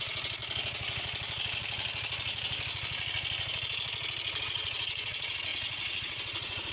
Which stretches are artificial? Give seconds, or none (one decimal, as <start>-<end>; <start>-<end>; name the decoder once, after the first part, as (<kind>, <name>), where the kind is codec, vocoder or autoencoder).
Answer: 0.0-0.4 (vocoder, WaveNeXt); 4.4-6.7

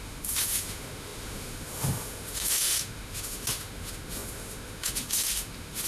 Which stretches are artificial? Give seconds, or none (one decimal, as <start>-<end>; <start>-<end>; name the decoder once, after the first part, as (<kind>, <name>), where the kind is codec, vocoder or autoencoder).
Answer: 0.0-5.9 (autoencoder, DAC-VAE)

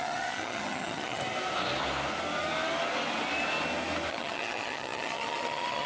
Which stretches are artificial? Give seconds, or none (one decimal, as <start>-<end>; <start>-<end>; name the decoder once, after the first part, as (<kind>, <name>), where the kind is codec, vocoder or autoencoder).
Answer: 0.0-1.2 (vocoder, HiFi-GAN); 4.1-5.9

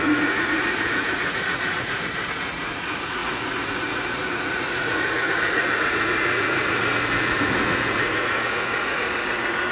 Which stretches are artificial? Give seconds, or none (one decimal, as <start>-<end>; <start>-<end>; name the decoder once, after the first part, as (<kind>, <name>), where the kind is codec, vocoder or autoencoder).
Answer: 0.0-9.7 (vocoder, Vocos)

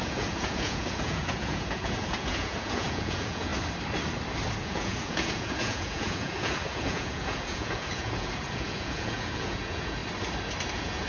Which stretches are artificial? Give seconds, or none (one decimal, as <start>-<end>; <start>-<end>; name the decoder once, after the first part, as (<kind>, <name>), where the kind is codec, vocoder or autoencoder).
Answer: 0.0-3.5 (vocoder, Vocos); 4.6-10.0; 10.7-11.1